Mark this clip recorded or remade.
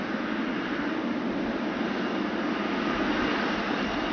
recorded